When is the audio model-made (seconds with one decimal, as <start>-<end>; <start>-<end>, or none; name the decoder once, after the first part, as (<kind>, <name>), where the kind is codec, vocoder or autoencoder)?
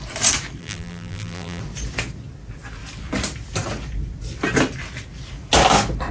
0.6-1.6 (vocoder, BigVGAN v2)